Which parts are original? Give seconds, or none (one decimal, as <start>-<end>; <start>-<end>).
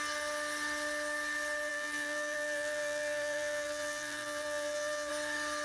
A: 0.0-1.7; 5.1-5.6